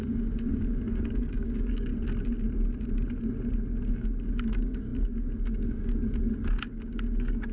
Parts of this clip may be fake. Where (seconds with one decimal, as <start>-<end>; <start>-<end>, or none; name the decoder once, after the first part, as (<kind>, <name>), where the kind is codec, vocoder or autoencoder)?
0.0-1.9 (codec, DAC); 3.9-7.5